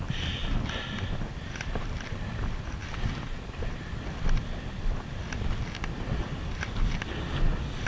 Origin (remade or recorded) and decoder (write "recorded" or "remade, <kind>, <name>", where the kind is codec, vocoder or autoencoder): recorded